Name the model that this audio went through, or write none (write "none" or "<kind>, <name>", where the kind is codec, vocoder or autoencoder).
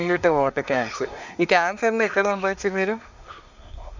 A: codec, SNAC